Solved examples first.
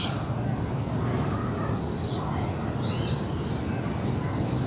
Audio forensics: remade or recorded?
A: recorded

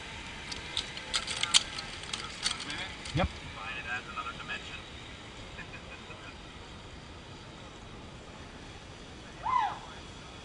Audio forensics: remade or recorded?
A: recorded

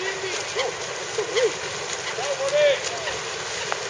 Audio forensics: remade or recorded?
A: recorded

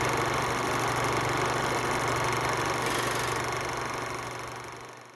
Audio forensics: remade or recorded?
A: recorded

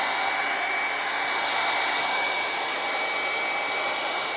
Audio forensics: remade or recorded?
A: recorded